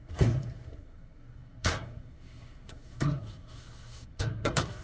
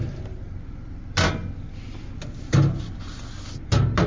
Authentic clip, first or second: second